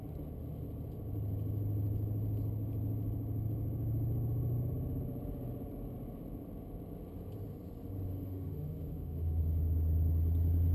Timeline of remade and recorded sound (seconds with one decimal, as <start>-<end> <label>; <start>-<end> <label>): 0.0-8.1 recorded; 8.1-9.4 remade; 9.4-10.7 recorded